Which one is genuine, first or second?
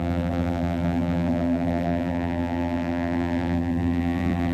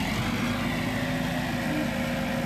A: second